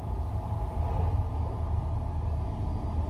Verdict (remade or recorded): recorded